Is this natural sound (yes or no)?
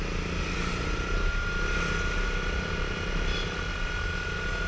yes